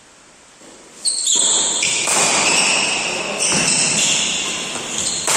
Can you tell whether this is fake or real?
real